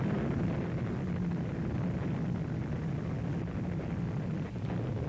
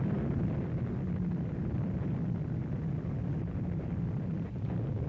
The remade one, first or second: second